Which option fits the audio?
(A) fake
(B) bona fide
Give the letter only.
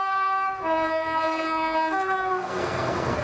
A